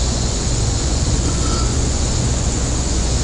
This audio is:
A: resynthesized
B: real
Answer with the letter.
A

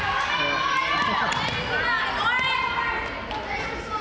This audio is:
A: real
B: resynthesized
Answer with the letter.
A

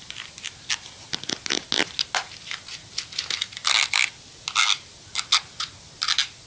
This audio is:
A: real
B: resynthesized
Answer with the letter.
A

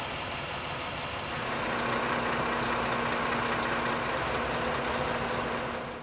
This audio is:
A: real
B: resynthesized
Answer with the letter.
A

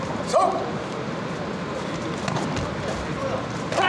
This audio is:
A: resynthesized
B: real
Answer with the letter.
B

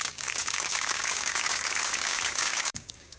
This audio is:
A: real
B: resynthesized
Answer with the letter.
B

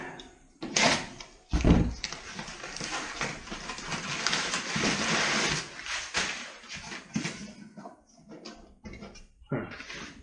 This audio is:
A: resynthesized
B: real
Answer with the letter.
B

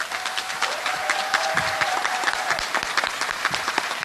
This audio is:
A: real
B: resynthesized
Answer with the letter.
B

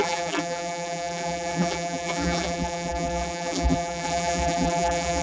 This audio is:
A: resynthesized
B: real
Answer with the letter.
A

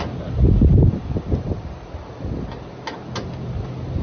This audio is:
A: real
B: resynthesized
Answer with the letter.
A